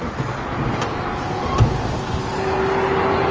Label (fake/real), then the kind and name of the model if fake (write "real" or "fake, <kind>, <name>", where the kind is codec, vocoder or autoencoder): real